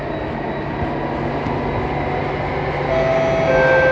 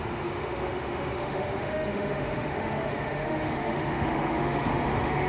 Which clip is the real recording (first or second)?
first